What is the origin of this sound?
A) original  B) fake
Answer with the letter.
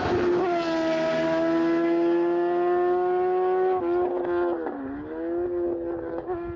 A